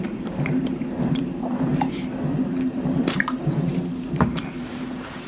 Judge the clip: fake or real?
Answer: fake